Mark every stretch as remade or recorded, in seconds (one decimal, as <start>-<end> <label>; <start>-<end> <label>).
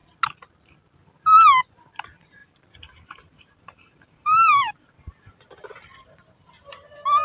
0.0-2.4 recorded; 2.4-6.7 remade; 6.7-7.2 recorded